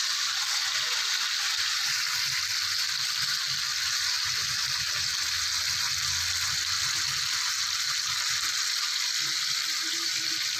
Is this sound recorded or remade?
recorded